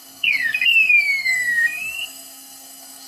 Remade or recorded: remade